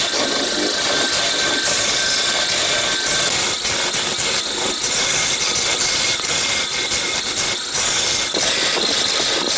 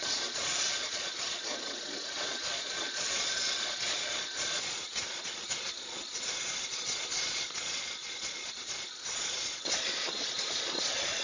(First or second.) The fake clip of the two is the second